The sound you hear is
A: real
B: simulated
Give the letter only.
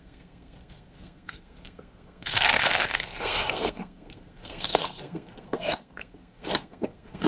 B